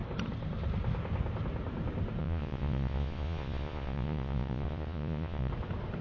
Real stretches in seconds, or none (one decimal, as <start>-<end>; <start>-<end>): 0.0-2.2; 5.5-6.0